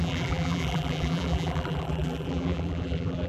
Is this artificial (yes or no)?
yes